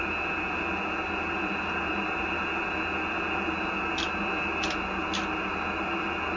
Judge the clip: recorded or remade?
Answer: recorded